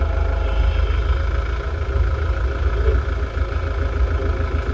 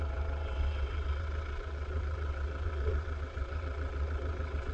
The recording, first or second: first